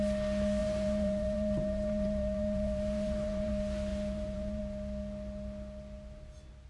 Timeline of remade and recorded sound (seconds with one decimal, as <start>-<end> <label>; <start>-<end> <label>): 0.0-0.6 recorded; 0.6-3.5 remade; 3.5-3.9 recorded; 3.9-4.6 remade; 4.6-6.7 recorded